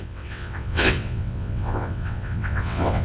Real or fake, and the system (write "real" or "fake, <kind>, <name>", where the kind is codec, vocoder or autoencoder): fake, vocoder, WaveNeXt